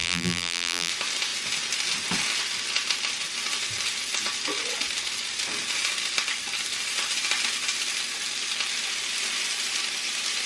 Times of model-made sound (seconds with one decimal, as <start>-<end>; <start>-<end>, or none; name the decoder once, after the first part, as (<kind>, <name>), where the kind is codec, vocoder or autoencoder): 0.0-0.9 (vocoder, BigVGAN v2)